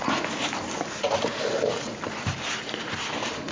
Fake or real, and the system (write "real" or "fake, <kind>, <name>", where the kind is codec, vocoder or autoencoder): real